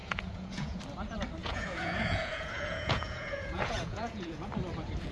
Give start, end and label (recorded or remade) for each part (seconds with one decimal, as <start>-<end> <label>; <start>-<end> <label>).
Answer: 0.0-0.8 remade; 0.8-1.4 recorded; 1.4-4.5 remade; 4.5-5.1 recorded